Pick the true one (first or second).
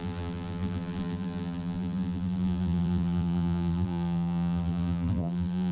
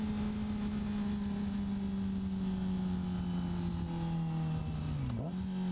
second